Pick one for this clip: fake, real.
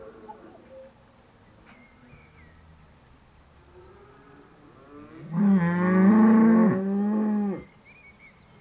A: real